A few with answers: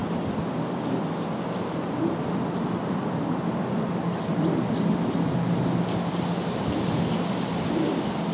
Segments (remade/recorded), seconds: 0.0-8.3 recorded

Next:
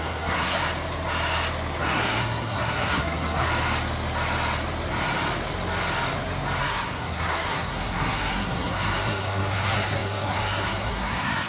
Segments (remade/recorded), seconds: 0.0-0.6 remade; 0.6-1.8 recorded; 1.8-3.5 remade; 3.5-6.6 recorded; 6.6-11.5 remade

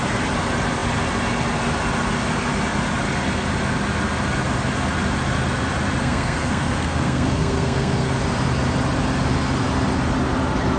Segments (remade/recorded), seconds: 0.0-6.0 recorded; 6.0-8.2 remade; 8.2-10.8 recorded

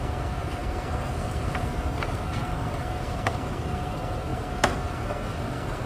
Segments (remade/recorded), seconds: 0.0-5.9 remade